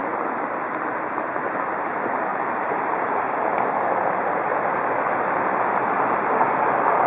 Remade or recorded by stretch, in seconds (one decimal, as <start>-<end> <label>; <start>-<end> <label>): 0.0-0.5 remade; 0.5-1.4 recorded; 1.4-1.9 remade; 1.9-2.3 recorded; 2.3-4.8 remade; 4.8-7.1 recorded